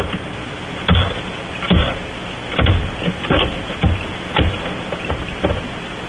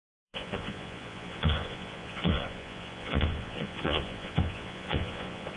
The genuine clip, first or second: first